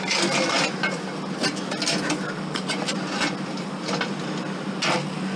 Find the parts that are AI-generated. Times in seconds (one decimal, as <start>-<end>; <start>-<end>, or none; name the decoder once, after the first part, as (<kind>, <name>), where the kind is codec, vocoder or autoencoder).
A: none